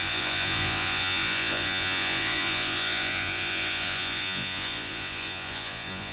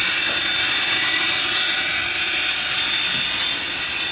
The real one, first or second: second